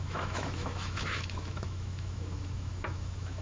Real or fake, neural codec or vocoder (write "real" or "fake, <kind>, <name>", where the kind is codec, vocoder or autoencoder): fake, autoencoder, DAC-VAE